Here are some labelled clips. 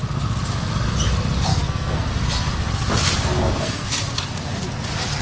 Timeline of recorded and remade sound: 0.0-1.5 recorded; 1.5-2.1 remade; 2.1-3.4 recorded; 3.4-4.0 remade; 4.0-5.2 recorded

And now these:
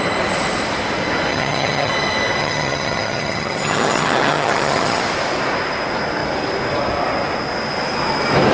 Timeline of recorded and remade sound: 0.0-1.3 recorded; 1.3-1.9 remade; 1.9-2.4 recorded; 2.4-5.0 remade; 5.0-8.5 recorded

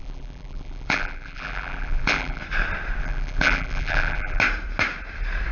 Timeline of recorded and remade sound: 0.0-2.4 remade; 2.4-3.0 recorded; 3.0-4.4 remade; 4.4-5.5 recorded

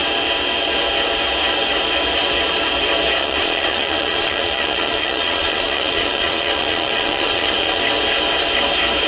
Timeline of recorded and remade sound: 0.0-3.2 recorded; 3.2-7.8 remade; 7.8-9.1 recorded

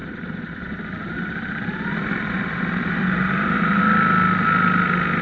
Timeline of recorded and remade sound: 0.0-0.8 remade; 0.8-1.9 recorded; 1.9-3.8 remade; 3.8-5.2 recorded

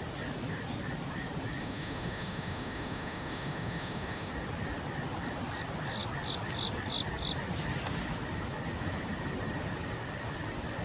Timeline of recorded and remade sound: 0.0-1.6 recorded; 1.6-4.3 remade; 4.3-10.8 recorded